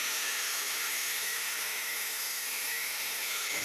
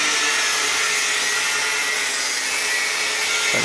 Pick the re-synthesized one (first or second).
first